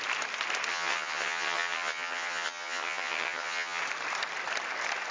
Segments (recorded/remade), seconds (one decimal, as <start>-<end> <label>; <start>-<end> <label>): 0.0-0.7 recorded; 0.7-3.8 remade; 3.8-5.1 recorded